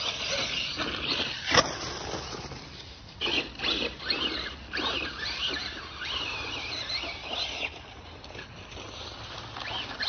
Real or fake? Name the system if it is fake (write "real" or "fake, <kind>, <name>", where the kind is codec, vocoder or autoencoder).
real